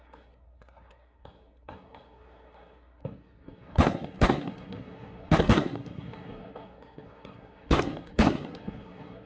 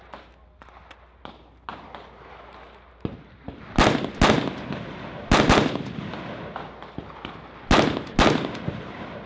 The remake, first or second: first